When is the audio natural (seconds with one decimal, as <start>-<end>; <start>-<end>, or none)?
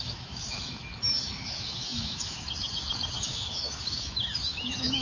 none